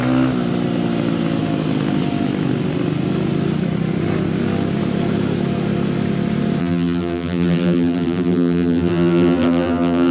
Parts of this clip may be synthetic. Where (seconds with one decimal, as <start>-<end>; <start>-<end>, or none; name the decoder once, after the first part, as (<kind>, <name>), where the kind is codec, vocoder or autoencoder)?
6.6-10.1 (vocoder, BigVGAN v2)